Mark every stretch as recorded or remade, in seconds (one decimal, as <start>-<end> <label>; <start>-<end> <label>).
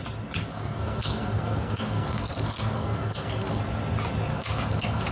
0.0-0.5 recorded; 0.5-3.6 remade; 3.6-4.3 recorded; 4.3-5.1 remade